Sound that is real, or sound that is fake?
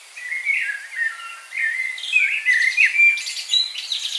real